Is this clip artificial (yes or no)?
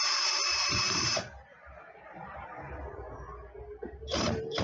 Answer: yes